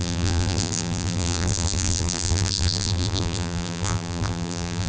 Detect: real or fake fake